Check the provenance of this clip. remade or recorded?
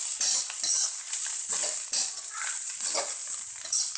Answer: remade